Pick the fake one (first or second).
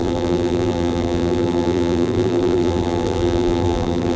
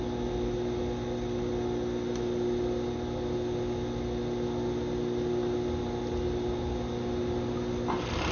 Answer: first